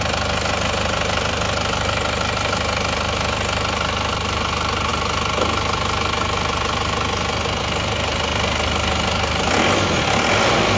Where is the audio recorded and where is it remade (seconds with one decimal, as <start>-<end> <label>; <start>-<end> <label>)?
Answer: 0.0-10.8 recorded

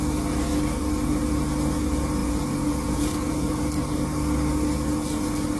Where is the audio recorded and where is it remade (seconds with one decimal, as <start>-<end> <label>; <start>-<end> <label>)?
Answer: 0.0-2.2 recorded; 2.2-3.6 remade; 3.6-5.6 recorded

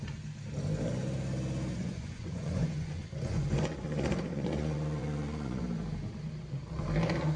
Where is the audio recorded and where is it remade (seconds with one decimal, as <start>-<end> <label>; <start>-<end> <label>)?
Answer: 0.0-1.8 recorded; 1.8-5.6 remade; 5.6-7.4 recorded

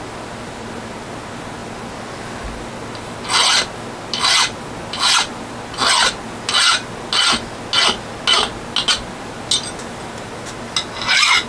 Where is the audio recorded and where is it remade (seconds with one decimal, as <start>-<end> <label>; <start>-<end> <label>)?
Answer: 0.0-11.5 recorded

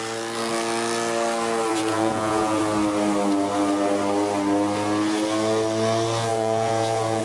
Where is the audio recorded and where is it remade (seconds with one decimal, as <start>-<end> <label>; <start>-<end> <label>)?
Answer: 0.0-1.7 recorded; 1.7-2.6 remade; 2.6-6.3 recorded; 6.3-7.2 remade

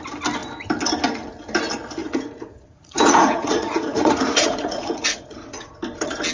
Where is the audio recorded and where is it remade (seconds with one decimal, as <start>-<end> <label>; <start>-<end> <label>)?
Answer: 0.0-2.0 recorded; 2.0-5.7 remade; 5.7-6.3 recorded